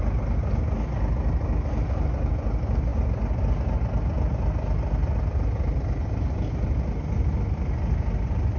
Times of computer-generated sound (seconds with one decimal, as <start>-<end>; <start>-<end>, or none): none